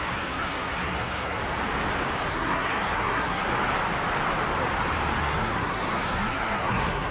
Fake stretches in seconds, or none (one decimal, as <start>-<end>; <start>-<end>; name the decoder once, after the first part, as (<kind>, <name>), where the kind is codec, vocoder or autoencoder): 0.0-1.4 (codec, SNAC); 2.3-3.4; 5.2-7.1